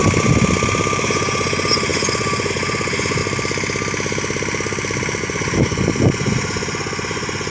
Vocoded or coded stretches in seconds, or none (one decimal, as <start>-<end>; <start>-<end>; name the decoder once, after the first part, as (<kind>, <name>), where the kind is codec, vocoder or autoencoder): 1.0-3.2 (vocoder, Vocos); 5.2-7.5